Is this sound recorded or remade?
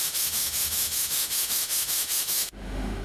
remade